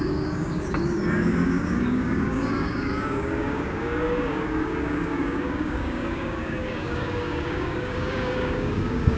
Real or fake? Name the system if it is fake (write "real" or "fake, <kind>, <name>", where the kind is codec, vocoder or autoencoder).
fake, codec, DAC